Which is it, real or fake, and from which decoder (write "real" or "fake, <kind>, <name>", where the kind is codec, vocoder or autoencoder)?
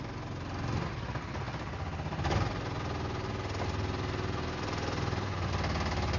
real